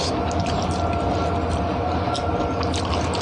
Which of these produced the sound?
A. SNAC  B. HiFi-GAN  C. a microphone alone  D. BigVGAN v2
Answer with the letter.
C